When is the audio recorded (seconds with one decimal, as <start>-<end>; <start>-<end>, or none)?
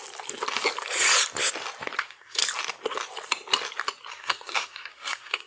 0.0-2.0; 2.4-4.1